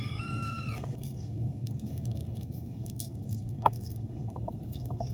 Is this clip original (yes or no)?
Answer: no